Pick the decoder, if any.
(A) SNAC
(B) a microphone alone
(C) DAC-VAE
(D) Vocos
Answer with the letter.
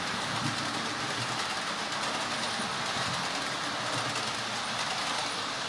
B